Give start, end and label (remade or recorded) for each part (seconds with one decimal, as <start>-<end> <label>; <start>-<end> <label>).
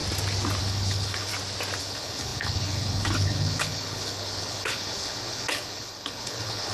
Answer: 0.0-0.6 recorded; 0.6-1.3 remade; 1.3-1.8 recorded; 1.8-6.7 remade